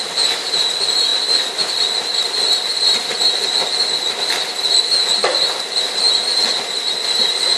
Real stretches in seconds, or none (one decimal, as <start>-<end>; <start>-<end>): none